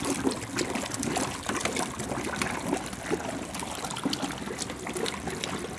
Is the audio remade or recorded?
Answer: recorded